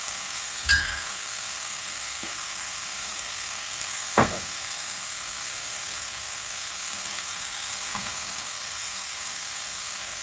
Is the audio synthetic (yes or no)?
yes